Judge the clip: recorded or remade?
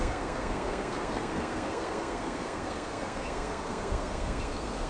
remade